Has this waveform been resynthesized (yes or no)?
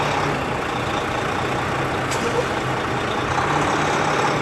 no